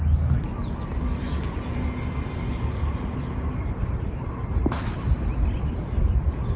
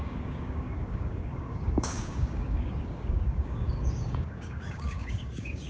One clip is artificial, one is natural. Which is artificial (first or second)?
second